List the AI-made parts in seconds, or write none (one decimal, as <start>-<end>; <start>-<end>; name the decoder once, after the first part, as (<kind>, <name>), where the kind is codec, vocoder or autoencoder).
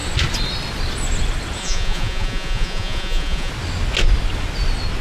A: 1.6-3.5 (vocoder, Vocos)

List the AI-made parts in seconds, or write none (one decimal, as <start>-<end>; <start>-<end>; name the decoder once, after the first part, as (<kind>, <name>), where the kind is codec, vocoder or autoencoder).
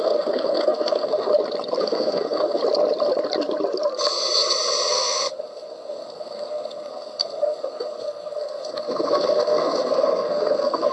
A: 0.0-1.3 (codec, SNAC); 1.8-2.6; 4.9-10.9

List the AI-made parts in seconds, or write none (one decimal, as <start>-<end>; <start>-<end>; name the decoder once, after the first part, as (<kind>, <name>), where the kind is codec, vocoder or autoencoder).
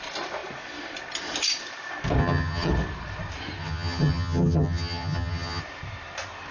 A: 2.2-2.7 (vocoder, HiFi-GAN); 3.6-5.6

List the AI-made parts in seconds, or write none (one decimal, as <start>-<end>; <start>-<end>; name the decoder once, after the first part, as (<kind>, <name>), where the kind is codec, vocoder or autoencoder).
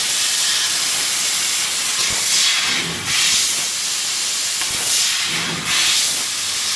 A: none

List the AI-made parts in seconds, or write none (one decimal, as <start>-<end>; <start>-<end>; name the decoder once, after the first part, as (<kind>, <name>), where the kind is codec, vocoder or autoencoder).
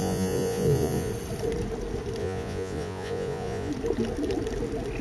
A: 0.0-1.1 (vocoder, Vocos); 2.2-3.7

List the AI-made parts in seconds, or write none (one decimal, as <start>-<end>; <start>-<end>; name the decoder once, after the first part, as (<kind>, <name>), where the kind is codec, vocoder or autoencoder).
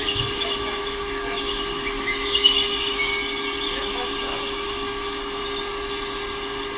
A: 0.0-3.1 (autoencoder, DAC-VAE); 3.8-5.4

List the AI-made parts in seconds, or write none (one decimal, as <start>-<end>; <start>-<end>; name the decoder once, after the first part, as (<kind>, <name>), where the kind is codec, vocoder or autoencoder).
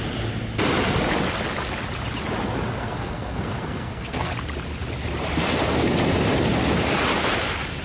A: 2.8-4.3 (codec, SNAC)